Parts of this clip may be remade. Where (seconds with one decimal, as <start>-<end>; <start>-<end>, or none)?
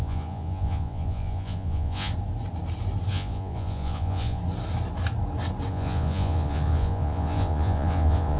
0.0-2.1; 3.1-4.4; 5.7-8.4